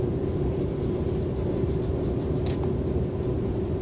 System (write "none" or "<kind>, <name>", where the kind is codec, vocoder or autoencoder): none